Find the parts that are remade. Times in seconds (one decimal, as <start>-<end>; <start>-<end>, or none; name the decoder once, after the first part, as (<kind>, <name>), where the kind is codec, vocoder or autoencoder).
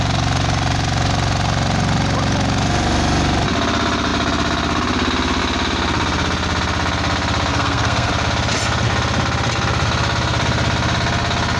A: 7.5-8.1 (codec, SNAC)